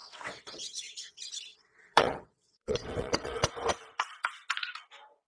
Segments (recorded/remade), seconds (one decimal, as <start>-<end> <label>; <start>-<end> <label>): 0.0-1.1 remade; 1.1-1.5 recorded; 1.5-3.5 remade; 3.5-5.3 recorded